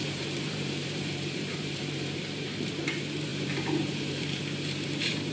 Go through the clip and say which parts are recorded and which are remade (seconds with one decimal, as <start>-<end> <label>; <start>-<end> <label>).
0.0-5.3 remade